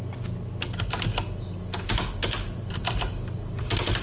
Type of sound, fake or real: real